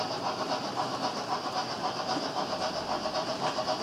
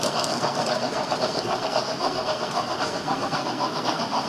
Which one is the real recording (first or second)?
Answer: first